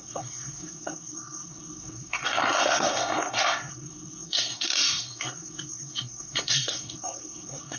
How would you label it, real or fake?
fake